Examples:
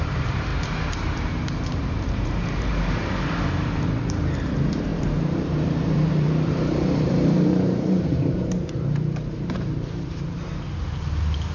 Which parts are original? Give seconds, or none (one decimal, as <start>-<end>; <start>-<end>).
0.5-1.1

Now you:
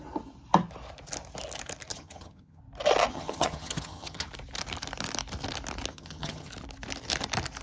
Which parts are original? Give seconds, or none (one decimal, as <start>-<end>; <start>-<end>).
0.0-1.9; 2.6-3.1; 4.3-5.9; 6.5-7.6

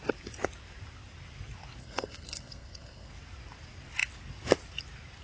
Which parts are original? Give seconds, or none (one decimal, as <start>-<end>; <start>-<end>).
0.0-1.8; 3.1-5.2